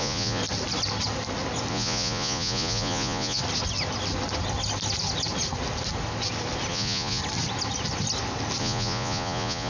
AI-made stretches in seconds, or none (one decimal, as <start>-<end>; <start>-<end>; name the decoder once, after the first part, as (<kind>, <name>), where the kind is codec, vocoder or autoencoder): 0.0-0.4 (vocoder, Vocos); 1.7-3.4; 6.7-7.2; 8.6-9.7